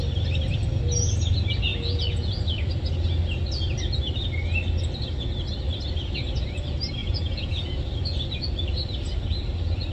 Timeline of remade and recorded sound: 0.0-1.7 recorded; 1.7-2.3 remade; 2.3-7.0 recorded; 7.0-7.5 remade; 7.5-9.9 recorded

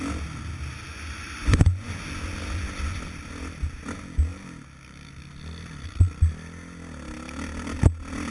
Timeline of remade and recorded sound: 0.0-0.9 recorded; 0.9-1.9 remade; 1.9-8.3 recorded

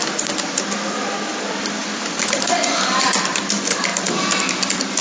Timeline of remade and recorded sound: 0.0-5.0 recorded

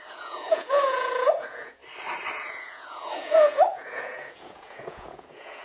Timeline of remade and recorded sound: 0.0-1.8 remade; 1.8-2.3 recorded; 2.3-5.6 remade